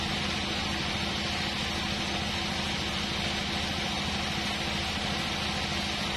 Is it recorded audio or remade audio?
recorded